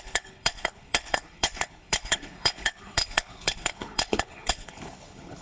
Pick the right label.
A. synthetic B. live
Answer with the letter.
A